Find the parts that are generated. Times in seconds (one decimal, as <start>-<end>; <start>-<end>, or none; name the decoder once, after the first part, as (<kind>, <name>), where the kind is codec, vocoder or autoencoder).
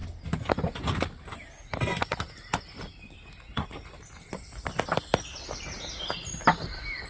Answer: 3.5-4.0 (vocoder, BigVGAN v2)